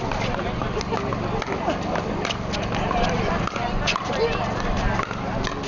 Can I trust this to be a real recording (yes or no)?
yes